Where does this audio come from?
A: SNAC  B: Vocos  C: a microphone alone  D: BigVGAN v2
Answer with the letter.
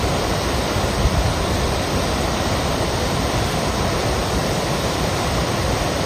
D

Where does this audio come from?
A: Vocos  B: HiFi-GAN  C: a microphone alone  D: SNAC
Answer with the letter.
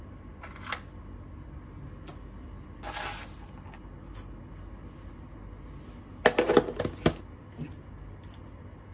C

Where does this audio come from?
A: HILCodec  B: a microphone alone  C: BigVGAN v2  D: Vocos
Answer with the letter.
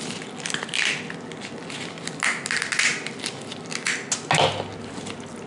B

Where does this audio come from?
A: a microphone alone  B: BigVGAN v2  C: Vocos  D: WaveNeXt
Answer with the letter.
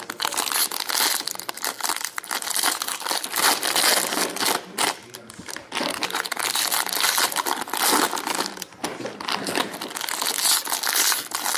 A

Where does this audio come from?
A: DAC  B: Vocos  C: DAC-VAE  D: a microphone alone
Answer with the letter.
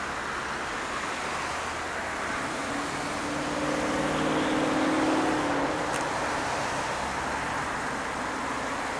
D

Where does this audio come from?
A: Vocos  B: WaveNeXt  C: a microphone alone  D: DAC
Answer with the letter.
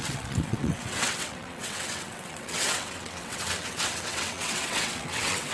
B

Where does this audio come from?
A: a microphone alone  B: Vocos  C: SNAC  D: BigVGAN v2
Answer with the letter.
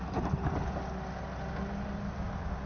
A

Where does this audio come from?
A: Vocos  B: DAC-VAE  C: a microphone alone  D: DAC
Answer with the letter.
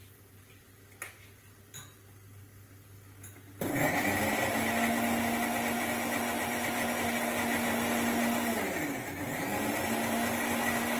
C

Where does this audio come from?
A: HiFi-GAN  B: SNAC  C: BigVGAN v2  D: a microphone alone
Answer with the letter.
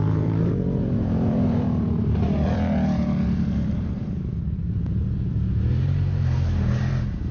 C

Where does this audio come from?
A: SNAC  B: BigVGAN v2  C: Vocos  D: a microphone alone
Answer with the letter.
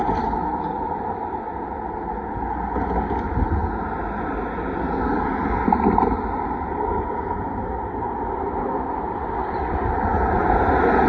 D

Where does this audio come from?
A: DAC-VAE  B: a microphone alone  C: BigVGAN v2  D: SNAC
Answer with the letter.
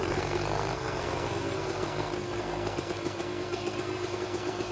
D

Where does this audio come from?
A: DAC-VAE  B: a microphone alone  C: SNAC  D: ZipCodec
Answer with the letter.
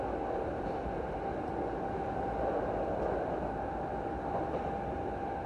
B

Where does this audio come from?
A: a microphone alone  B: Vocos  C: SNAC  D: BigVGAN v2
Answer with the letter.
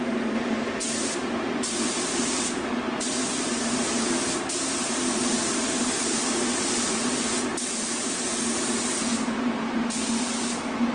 D